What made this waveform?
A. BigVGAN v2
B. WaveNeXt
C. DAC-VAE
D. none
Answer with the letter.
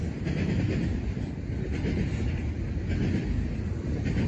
D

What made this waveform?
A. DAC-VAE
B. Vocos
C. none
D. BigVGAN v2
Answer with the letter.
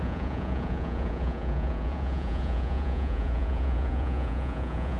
B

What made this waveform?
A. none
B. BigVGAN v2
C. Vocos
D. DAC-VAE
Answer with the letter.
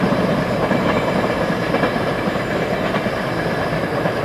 B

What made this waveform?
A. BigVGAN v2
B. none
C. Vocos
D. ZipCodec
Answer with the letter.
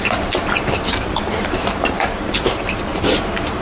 A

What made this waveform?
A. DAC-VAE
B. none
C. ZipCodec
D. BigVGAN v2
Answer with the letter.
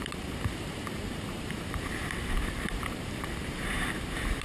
D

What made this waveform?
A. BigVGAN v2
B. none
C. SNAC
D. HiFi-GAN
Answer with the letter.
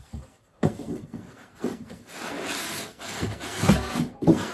C